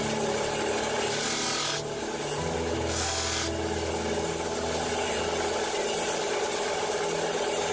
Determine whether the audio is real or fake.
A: real